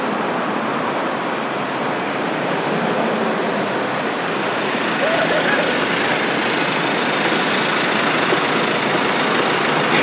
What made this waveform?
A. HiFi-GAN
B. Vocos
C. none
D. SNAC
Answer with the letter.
C